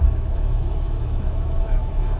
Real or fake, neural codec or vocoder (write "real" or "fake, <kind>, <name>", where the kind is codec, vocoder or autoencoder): fake, autoencoder, DAC-VAE